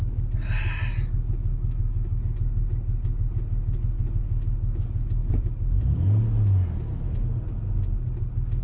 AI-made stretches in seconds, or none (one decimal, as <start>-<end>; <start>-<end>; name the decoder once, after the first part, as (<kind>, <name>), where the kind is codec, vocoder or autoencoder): 1.5-2.2 (autoencoder, DAC-VAE)